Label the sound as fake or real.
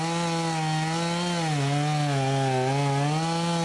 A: real